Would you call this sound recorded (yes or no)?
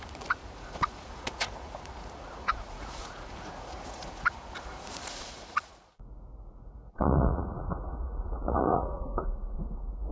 no